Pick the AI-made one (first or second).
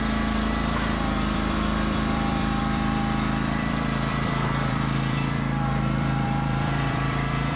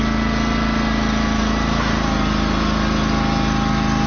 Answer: first